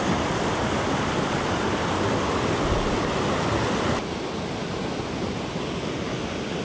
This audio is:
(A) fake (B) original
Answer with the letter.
B